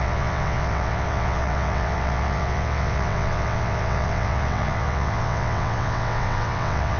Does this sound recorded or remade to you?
remade